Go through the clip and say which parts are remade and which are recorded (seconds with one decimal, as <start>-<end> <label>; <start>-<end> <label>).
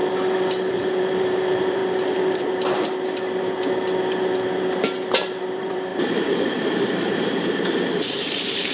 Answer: 0.0-0.7 recorded; 0.7-1.8 remade; 1.8-5.4 recorded; 5.4-8.7 remade